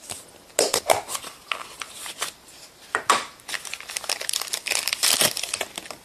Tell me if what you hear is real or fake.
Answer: real